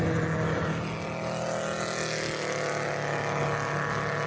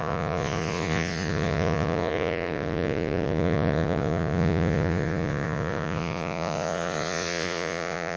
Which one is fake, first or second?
second